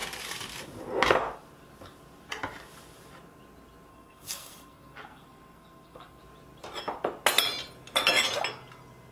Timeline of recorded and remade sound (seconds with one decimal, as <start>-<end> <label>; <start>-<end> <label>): 0.0-3.9 recorded; 3.9-6.2 remade; 6.2-9.1 recorded

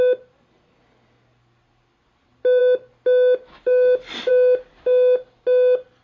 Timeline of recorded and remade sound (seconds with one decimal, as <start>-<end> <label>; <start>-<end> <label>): 0.0-6.0 recorded

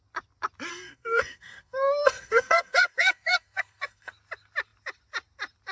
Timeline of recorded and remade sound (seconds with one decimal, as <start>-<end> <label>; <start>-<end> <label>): 0.0-0.7 recorded; 0.7-4.1 remade; 4.1-5.7 recorded

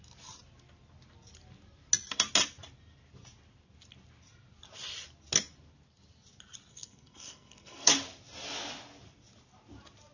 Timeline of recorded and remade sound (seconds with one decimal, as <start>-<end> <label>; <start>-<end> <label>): 0.0-6.7 recorded; 6.7-7.9 remade; 7.9-10.1 recorded